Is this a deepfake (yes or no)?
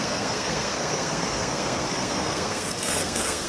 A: yes